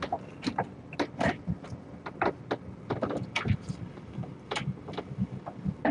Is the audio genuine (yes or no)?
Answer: yes